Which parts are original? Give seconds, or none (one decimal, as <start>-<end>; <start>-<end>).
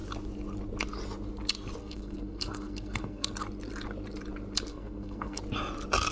0.0-1.8; 3.3-4.7; 5.4-6.1